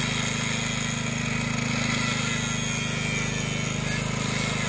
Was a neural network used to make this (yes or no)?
no